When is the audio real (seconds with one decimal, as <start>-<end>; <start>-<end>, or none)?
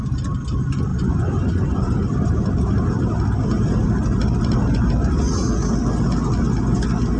0.0-0.9; 5.2-7.2